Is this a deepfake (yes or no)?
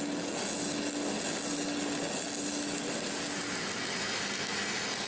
no